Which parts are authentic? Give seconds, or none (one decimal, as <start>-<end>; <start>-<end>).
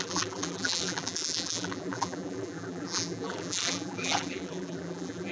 none